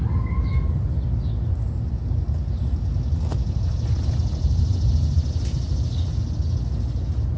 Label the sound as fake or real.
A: real